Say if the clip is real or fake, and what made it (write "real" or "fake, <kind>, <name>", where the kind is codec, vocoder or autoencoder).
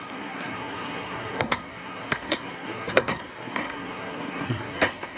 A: fake, codec, SNAC